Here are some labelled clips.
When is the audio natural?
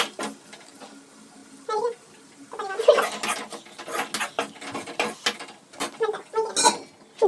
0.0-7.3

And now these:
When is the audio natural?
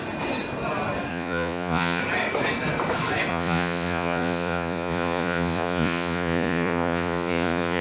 0.0-1.1; 2.0-3.3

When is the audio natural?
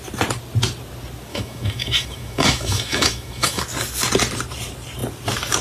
0.0-1.3; 3.6-5.6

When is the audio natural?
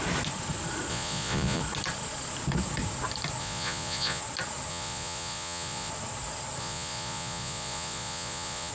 0.0-0.9; 1.6-3.4; 4.2-4.7; 5.9-6.6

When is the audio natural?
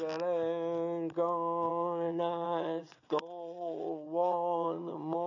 0.0-1.7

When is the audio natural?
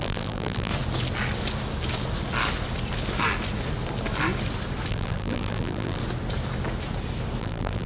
0.7-4.9; 6.0-7.4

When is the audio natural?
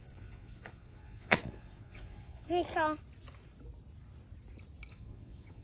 2.5-4.9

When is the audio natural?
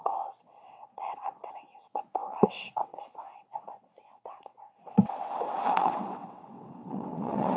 none